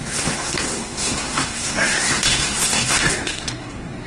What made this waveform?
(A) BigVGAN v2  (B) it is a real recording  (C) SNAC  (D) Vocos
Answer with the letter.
C